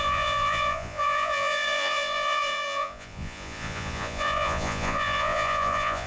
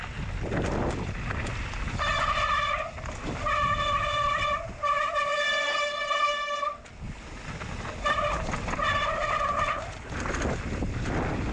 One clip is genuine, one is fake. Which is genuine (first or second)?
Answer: second